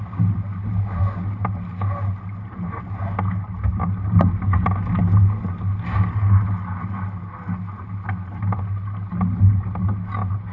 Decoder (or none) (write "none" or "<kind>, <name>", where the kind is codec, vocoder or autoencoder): none